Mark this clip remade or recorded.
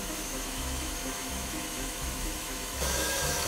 remade